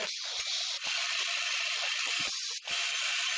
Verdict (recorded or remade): recorded